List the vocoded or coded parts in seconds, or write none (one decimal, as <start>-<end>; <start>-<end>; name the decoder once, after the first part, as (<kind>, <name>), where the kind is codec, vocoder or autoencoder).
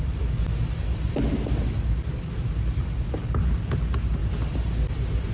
none